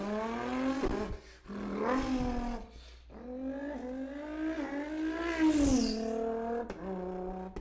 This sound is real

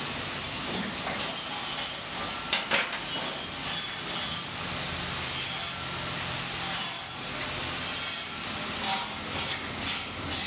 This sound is real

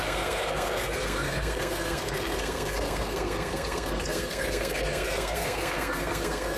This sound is fake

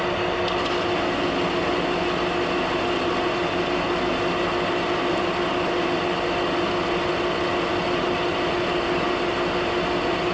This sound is real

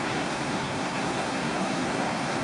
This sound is fake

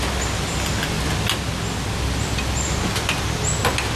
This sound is real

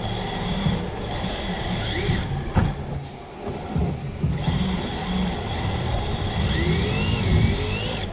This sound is real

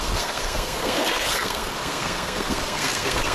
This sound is fake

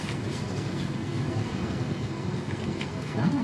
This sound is fake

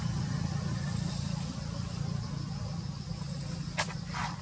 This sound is real